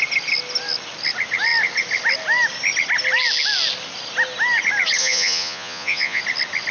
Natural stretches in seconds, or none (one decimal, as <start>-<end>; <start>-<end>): 0.0-5.0; 6.2-6.7